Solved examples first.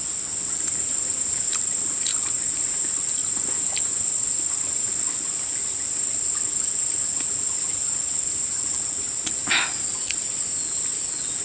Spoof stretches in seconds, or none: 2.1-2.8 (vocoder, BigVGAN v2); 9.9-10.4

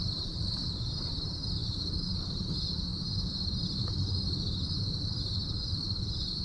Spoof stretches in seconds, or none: 0.0-6.4 (vocoder, BigVGAN v2)

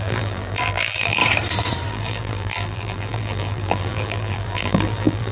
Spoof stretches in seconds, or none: 0.0-1.2 (vocoder, BigVGAN v2); 1.9-5.3